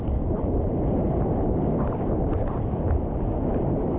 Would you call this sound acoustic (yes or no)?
yes